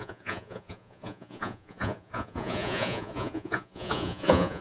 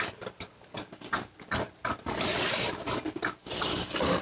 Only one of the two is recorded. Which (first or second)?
second